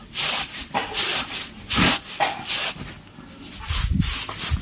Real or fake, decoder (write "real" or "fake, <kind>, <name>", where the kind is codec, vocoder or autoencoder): real